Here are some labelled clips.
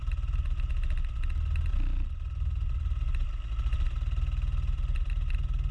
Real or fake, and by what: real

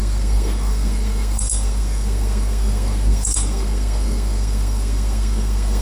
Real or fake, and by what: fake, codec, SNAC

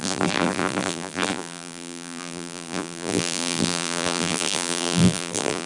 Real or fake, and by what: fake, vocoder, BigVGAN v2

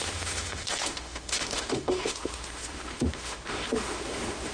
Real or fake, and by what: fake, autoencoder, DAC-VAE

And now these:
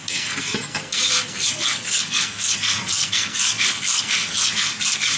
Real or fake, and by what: fake, codec, SNAC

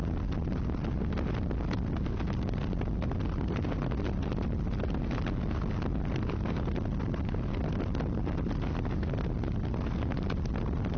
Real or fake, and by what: real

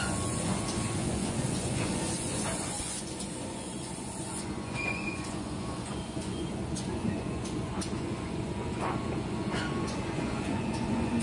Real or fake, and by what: fake, vocoder, Vocos